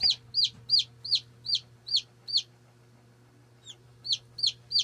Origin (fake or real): real